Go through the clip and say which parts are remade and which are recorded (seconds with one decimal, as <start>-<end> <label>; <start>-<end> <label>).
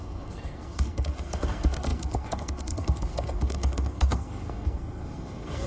0.0-5.7 remade